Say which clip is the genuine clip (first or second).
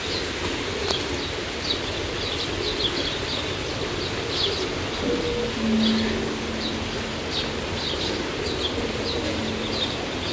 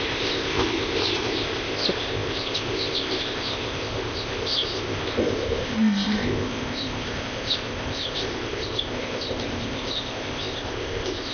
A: first